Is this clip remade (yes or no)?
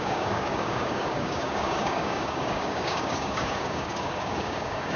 yes